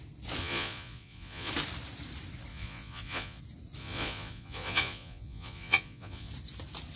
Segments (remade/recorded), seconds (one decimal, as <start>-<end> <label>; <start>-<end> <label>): 0.0-0.4 recorded; 0.4-1.5 remade; 1.5-2.5 recorded; 2.5-3.4 remade; 3.4-3.8 recorded; 3.8-6.3 remade; 6.3-7.0 recorded

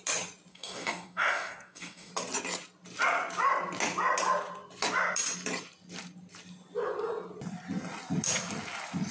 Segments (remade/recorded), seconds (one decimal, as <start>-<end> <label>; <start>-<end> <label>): 0.0-0.5 recorded; 0.5-2.1 remade; 2.1-9.1 recorded

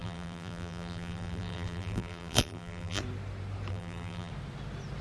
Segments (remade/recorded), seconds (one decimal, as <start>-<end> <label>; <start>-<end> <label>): 0.0-3.0 remade; 3.0-3.7 recorded; 3.7-4.3 remade; 4.3-5.0 recorded

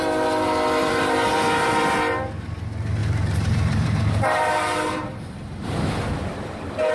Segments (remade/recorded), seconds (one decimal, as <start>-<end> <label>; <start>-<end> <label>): 0.0-0.8 recorded; 0.8-1.3 remade; 1.3-3.0 recorded; 3.0-5.9 remade; 5.9-6.9 recorded

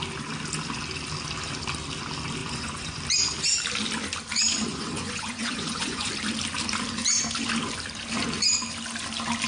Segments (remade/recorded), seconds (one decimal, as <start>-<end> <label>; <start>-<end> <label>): 0.0-2.4 recorded; 2.4-3.0 remade; 3.0-4.7 recorded; 4.7-6.1 remade; 6.1-9.5 recorded

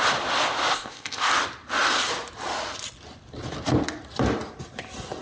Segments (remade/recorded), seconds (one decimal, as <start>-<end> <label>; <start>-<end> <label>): 0.0-0.7 recorded; 0.7-1.3 remade; 1.3-5.2 recorded

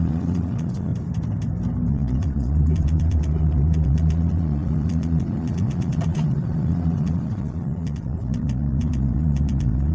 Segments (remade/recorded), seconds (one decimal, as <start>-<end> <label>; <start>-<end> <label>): 0.0-0.9 remade; 0.9-1.9 recorded; 1.9-9.9 remade